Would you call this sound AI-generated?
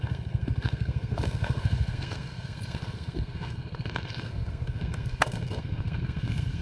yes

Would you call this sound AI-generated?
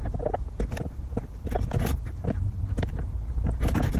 no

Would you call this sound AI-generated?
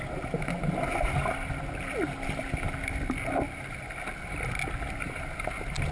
no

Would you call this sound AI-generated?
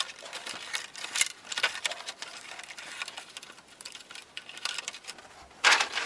no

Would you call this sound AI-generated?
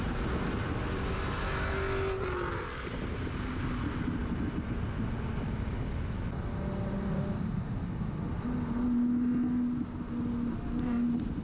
no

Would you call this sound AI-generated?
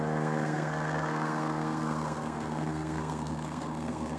yes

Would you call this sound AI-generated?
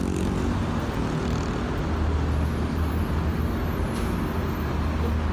no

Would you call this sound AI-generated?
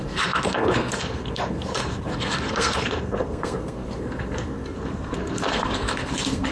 yes